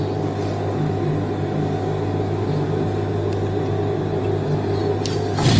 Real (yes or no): yes